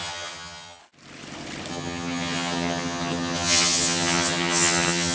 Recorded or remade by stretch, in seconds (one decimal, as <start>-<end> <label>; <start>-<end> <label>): 0.0-0.8 remade; 0.8-1.7 recorded; 1.7-5.1 remade